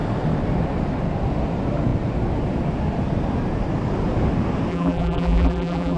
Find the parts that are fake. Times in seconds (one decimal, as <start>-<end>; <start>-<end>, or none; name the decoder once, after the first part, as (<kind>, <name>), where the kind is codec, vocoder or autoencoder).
4.7-6.0 (vocoder, BigVGAN v2)